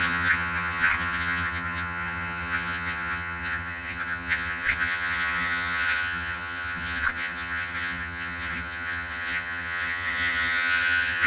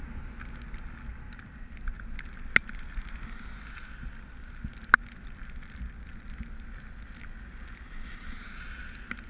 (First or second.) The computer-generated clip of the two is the first